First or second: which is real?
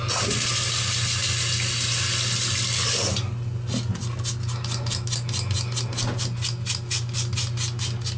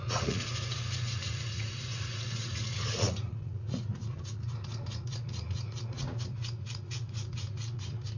first